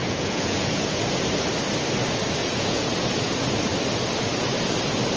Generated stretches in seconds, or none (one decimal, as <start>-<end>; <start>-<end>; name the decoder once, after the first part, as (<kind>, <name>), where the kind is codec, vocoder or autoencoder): 0.0-1.0 (vocoder, Vocos); 2.4-2.9